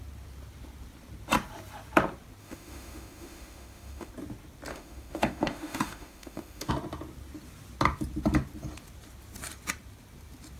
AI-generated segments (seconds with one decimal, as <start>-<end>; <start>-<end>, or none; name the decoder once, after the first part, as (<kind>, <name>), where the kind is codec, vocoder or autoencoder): 2.4-4.1 (autoencoder, DAC-VAE); 4.7-6.7